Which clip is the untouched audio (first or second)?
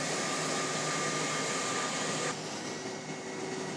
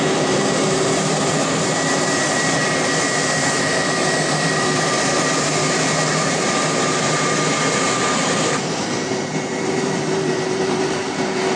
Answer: first